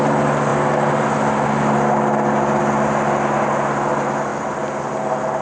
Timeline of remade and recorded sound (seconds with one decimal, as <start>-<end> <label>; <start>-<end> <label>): 0.0-4.3 recorded; 4.3-4.9 remade; 4.9-5.4 recorded